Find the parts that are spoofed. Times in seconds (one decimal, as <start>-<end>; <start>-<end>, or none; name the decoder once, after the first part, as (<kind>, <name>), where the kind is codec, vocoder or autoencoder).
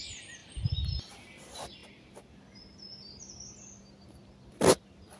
none